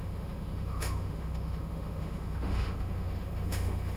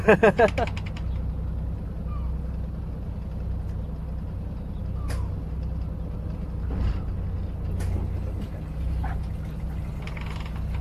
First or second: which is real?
second